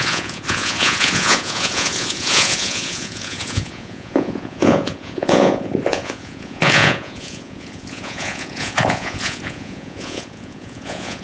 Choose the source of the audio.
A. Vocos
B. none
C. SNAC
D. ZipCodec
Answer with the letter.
A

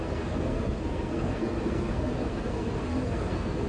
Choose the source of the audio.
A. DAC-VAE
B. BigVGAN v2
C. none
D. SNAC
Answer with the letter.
D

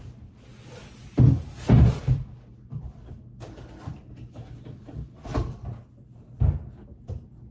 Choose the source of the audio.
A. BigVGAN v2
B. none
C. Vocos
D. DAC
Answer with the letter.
B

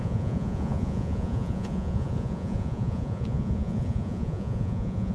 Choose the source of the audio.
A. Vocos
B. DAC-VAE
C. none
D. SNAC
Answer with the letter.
A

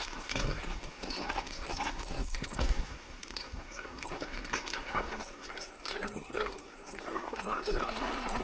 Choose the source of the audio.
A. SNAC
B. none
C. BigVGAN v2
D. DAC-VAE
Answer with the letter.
A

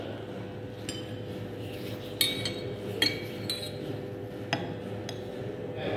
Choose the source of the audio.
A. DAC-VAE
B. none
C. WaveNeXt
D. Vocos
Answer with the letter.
B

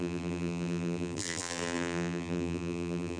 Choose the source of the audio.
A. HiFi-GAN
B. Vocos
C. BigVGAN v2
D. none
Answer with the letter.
C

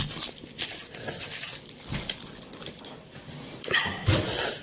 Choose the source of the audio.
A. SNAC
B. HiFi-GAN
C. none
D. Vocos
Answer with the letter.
C